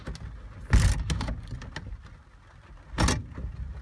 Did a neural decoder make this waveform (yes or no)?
no